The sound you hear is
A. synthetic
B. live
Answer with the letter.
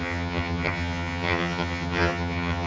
A